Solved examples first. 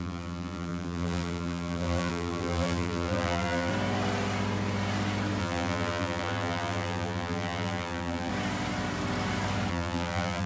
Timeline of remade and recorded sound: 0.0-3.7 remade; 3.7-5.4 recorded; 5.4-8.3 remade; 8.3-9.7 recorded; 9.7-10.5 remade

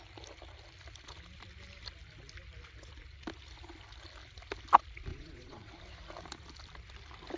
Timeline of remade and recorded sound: 0.0-5.1 recorded; 5.1-5.7 remade; 5.7-7.4 recorded

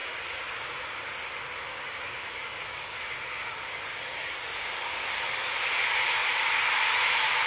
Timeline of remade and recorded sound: 0.0-0.9 remade; 0.9-1.7 recorded; 1.7-5.7 remade; 5.7-7.5 recorded

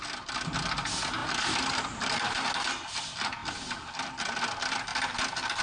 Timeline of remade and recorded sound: 0.0-5.6 recorded